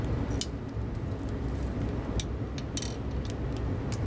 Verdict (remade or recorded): recorded